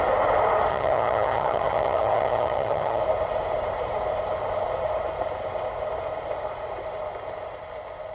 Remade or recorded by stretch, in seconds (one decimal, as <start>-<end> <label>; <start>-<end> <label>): 0.0-0.7 recorded; 0.7-3.0 remade; 3.0-8.1 recorded